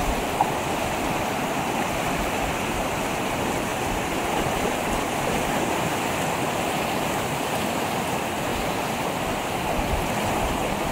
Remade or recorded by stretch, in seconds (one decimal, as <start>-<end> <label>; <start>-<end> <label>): 0.0-3.7 recorded; 3.7-7.4 remade; 7.4-8.5 recorded; 8.5-9.1 remade; 9.1-10.9 recorded